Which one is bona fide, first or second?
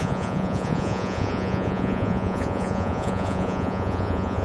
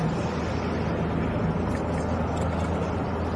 second